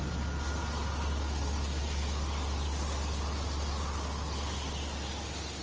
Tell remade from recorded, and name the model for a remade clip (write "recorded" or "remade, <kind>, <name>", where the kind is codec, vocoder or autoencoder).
recorded